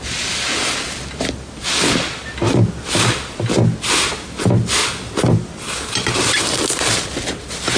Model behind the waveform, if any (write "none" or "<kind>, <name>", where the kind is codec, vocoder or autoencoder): none